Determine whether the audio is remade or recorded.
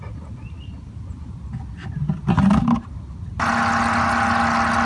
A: recorded